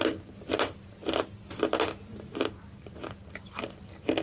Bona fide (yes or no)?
yes